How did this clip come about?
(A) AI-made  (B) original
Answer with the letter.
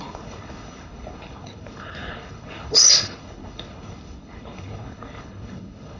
A